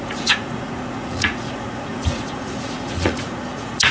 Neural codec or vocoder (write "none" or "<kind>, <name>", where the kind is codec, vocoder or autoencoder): vocoder, Vocos